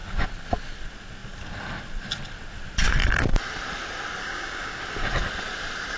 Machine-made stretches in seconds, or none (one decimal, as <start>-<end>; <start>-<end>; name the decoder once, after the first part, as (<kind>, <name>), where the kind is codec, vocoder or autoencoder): 4.2-4.8 (codec, DAC)